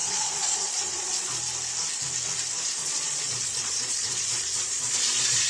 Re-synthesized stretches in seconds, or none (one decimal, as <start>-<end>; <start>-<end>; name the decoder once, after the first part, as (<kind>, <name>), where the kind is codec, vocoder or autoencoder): 0.0-1.4 (vocoder, Vocos); 2.8-5.5